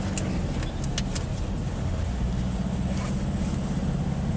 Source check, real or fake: real